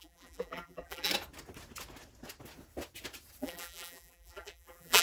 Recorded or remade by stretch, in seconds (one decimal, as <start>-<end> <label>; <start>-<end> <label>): 0.0-1.1 remade; 1.1-3.4 recorded; 3.4-5.0 remade